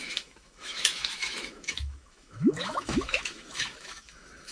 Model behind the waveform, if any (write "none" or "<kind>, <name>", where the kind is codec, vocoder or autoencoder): autoencoder, DAC-VAE